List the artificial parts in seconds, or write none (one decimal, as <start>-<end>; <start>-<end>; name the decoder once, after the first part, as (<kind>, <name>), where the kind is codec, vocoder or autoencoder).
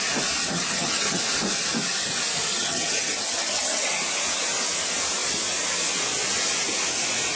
0.4-1.2 (vocoder, HiFi-GAN); 2.5-3.9